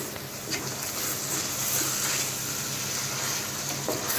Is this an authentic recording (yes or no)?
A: yes